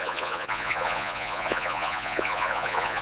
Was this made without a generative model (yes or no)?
no